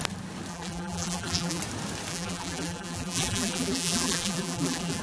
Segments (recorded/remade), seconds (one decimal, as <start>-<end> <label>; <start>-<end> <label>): 0.0-0.5 recorded; 0.5-1.6 remade; 1.6-2.1 recorded; 2.1-5.0 remade